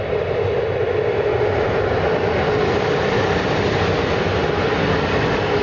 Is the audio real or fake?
real